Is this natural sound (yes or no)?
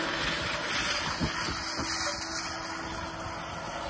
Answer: yes